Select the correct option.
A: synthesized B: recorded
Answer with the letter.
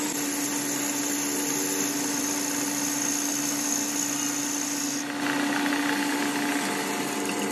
B